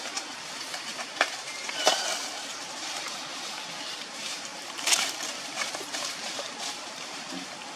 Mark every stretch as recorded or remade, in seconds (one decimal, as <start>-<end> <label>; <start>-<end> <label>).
0.0-1.9 remade; 1.9-2.5 recorded; 2.5-3.2 remade; 3.2-3.9 recorded; 3.9-7.8 remade